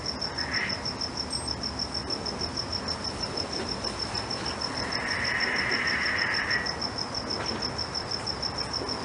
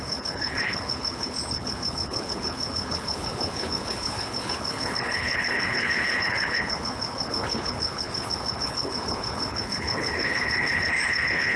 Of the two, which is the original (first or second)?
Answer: first